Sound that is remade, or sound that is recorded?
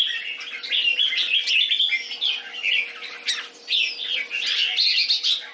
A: recorded